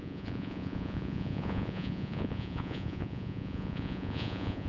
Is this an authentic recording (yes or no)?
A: no